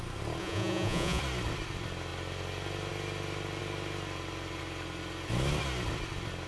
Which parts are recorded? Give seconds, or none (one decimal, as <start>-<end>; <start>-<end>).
0.0-0.4; 1.2-6.5